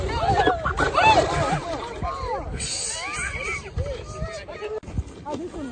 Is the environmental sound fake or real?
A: real